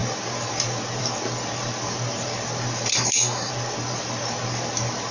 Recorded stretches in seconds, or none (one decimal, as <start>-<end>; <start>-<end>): 0.0-2.9; 3.5-5.1